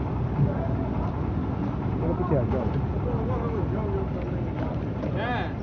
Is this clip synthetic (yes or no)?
no